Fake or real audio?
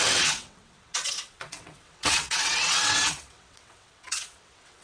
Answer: fake